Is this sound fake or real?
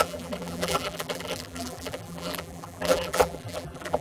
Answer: fake